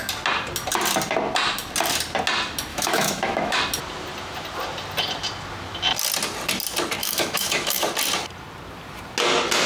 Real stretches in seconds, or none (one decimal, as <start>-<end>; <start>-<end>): 0.0-2.7; 3.6-7.0; 7.9-9.7